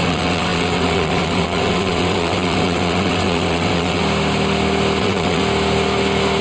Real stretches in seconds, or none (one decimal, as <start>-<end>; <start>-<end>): 4.0-5.0; 5.4-6.4